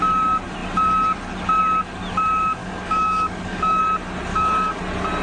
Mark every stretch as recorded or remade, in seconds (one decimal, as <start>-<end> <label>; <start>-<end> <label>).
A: 0.0-2.6 recorded; 2.6-3.8 remade; 3.8-4.3 recorded; 4.3-4.8 remade; 4.8-5.2 recorded